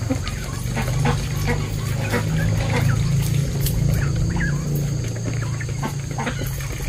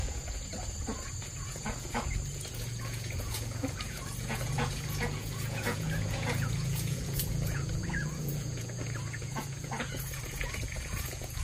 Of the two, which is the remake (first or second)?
second